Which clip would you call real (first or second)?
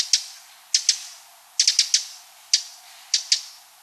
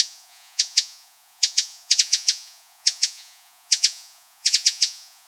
first